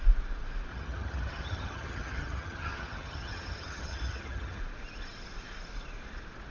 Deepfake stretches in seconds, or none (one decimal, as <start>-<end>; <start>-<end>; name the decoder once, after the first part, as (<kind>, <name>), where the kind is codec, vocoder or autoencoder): 0.7-4.6 (vocoder, HiFi-GAN)